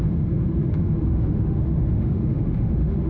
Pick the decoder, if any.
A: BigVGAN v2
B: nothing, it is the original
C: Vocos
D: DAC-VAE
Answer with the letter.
D